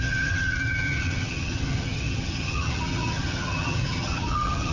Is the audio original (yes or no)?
no